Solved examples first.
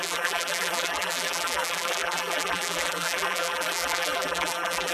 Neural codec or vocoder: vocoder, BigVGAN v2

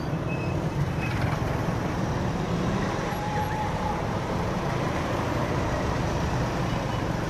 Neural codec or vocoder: vocoder, BigVGAN v2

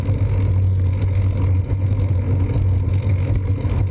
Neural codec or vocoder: none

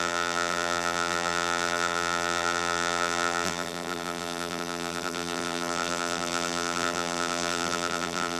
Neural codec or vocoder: vocoder, BigVGAN v2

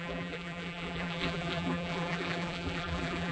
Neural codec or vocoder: vocoder, BigVGAN v2